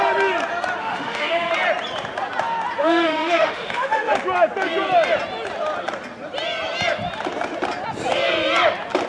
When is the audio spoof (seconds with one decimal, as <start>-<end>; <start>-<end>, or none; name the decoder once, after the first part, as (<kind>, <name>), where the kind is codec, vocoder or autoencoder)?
0.8-1.5 (autoencoder, DAC-VAE); 2.8-4.2